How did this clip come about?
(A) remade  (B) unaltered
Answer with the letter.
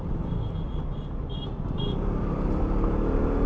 B